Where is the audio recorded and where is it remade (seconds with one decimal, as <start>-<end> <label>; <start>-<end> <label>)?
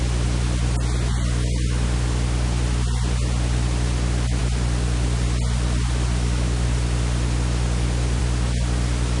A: 0.0-9.2 recorded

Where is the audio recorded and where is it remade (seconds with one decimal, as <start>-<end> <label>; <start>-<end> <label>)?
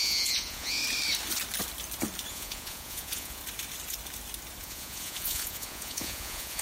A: 0.0-0.8 remade; 0.8-2.3 recorded; 2.3-3.4 remade; 3.4-4.6 recorded; 4.6-6.6 remade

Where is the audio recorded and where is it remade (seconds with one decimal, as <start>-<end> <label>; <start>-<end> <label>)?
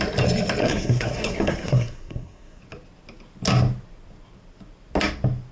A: 0.0-0.6 recorded; 0.6-2.6 remade; 2.6-5.5 recorded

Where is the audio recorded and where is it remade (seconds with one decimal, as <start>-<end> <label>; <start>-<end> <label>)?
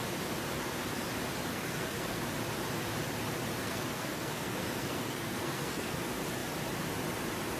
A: 0.0-1.5 recorded; 1.5-2.2 remade; 2.2-3.6 recorded; 3.6-5.9 remade; 5.9-7.6 recorded